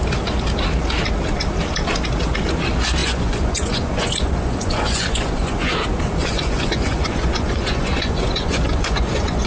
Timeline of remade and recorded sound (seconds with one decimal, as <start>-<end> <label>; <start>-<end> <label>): 0.0-3.0 recorded; 3.0-5.7 remade; 5.7-6.2 recorded; 6.2-9.5 remade

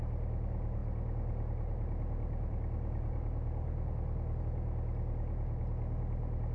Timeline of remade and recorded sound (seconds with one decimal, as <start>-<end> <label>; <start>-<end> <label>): 0.0-6.5 recorded